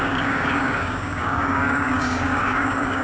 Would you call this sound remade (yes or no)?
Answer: yes